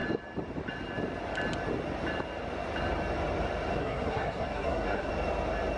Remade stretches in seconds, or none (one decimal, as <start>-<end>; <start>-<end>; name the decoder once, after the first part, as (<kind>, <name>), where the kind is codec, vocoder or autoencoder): 3.8-5.1 (codec, SNAC)